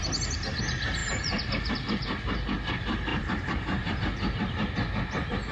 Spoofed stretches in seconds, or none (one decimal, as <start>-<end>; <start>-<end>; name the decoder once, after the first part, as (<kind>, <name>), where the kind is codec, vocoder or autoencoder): 1.0-1.7 (vocoder, BigVGAN v2); 3.1-4.0